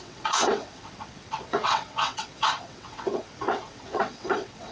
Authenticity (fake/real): fake